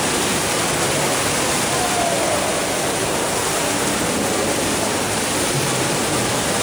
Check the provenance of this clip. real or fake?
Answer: real